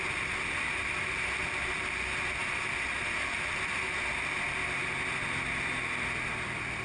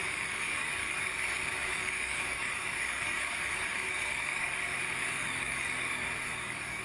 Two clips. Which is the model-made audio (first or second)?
second